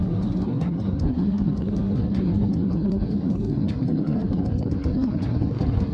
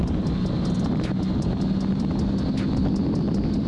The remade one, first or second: first